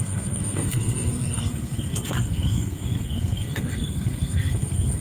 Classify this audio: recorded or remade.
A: remade